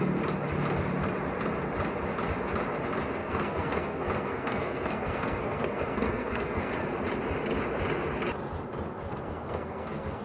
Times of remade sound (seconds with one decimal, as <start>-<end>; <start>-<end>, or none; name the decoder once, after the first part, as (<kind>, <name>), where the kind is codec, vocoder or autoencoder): 3.2-6.7 (codec, SNAC); 9.1-10.2